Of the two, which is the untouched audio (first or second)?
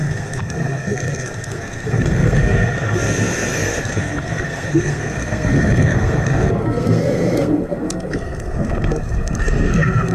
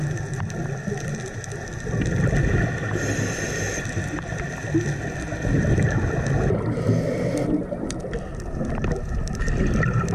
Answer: second